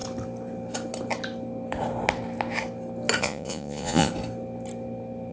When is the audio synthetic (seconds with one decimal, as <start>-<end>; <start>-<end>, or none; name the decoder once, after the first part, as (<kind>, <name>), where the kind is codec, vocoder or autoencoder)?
3.2-4.1 (vocoder, Vocos)